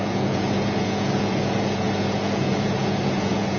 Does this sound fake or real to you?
fake